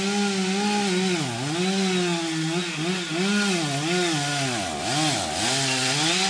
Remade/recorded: recorded